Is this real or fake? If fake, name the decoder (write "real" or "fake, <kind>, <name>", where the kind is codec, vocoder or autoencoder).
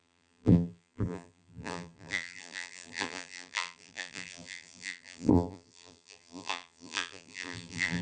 fake, vocoder, BigVGAN v2